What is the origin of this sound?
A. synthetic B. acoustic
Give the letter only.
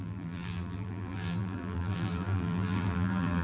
A